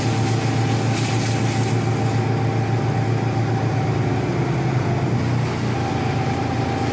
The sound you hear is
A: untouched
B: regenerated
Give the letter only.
A